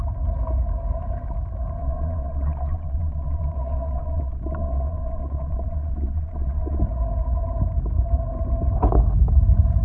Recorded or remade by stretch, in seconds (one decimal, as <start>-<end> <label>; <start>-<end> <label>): 0.0-1.8 recorded; 1.8-6.8 remade; 6.8-9.8 recorded